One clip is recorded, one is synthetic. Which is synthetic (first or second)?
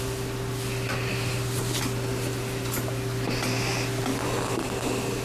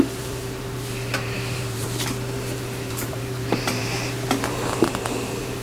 second